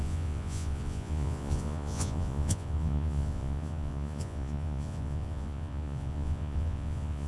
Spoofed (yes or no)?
yes